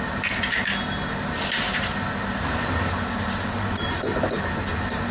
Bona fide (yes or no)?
yes